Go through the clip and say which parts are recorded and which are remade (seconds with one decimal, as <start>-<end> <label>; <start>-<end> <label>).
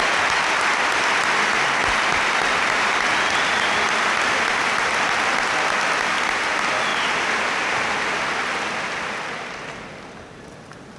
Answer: 0.0-11.0 recorded